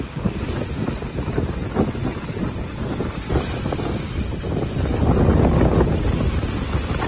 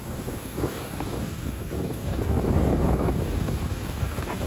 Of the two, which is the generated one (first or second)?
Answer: second